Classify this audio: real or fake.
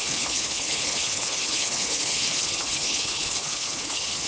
fake